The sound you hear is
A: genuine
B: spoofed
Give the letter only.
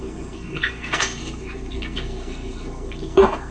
B